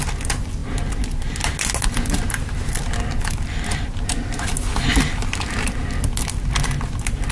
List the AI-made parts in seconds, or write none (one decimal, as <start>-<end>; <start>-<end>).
none